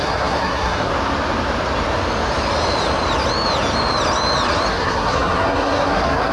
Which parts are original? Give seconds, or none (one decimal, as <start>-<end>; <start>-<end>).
0.9-4.7